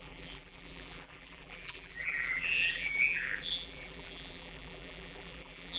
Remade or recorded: remade